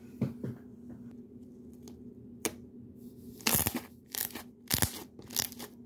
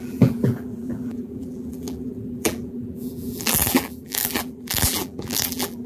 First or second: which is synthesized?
second